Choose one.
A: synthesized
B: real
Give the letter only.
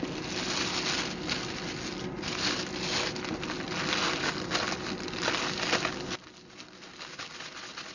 B